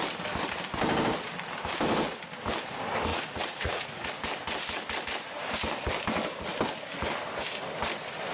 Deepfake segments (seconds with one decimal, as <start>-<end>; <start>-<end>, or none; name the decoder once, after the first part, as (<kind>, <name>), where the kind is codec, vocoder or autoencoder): 3.1-4.1 (vocoder, Vocos)